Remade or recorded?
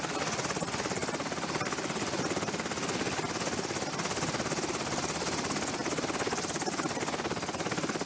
recorded